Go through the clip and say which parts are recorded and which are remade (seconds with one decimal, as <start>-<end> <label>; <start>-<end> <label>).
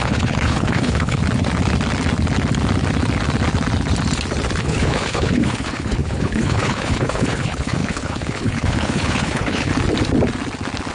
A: 0.0-1.2 remade; 1.2-4.6 recorded; 4.6-9.7 remade; 9.7-10.9 recorded